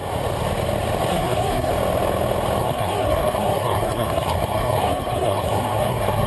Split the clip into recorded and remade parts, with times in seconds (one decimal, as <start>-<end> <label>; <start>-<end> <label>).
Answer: 0.0-1.1 recorded; 1.1-1.7 remade; 1.7-2.6 recorded; 2.6-6.3 remade